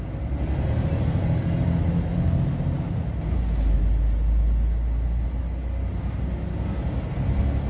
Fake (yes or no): no